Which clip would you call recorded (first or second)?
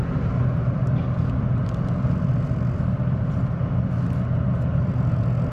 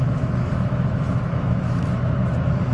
first